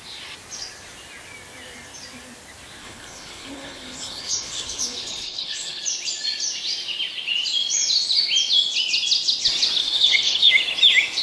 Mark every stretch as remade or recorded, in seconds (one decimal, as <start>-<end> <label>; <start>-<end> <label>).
0.0-2.8 recorded; 2.8-5.8 remade; 5.8-9.8 recorded; 9.8-10.5 remade; 10.5-11.2 recorded